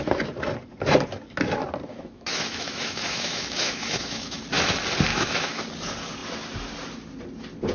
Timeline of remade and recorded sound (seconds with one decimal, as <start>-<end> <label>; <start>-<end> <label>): 0.0-1.9 recorded; 1.9-4.4 remade; 4.4-5.1 recorded; 5.1-5.6 remade; 5.6-7.7 recorded